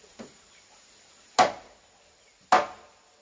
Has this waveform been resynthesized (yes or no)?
no